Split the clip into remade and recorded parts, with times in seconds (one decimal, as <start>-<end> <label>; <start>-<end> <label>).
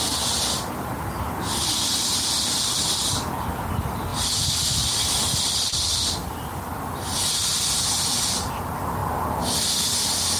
0.0-4.1 recorded; 4.1-6.7 remade; 6.7-10.4 recorded